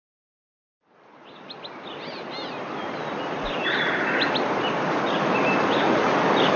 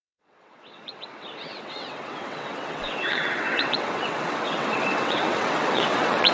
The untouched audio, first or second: first